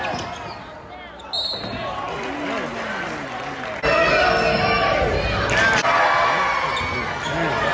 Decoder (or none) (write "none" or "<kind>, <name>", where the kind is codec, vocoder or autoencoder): none